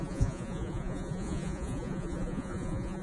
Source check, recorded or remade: remade